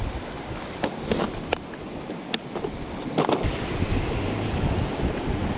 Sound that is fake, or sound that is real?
real